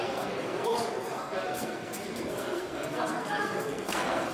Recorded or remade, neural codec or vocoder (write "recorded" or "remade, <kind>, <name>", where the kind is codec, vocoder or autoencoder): remade, codec, SNAC